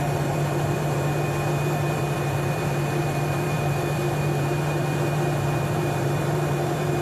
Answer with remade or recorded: remade